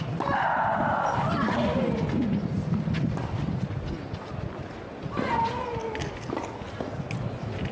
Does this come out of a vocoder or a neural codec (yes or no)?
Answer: no